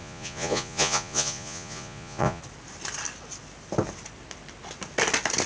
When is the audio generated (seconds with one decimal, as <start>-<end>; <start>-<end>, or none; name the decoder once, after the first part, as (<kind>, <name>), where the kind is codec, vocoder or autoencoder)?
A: 0.0-2.4 (vocoder, Vocos)